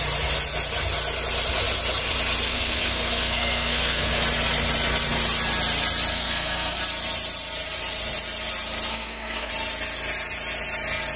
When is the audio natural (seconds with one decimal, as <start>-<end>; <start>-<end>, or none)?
0.0-2.5; 4.1-6.1; 6.8-8.9; 9.5-11.2